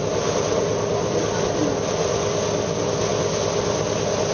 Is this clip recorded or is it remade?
recorded